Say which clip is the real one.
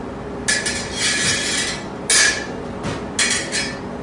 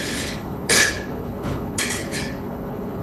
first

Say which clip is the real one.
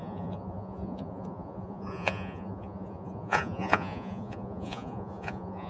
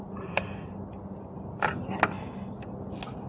second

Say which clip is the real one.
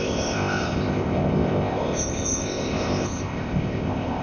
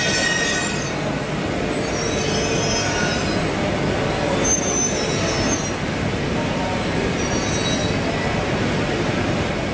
second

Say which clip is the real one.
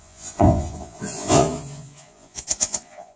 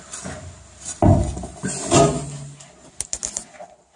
second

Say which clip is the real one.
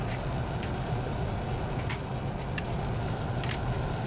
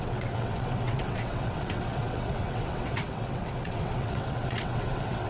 first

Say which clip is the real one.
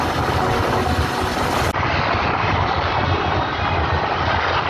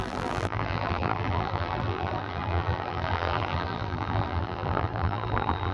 first